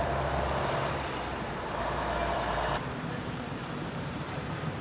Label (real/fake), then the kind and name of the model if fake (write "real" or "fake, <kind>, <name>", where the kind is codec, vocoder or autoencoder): fake, vocoder, BigVGAN v2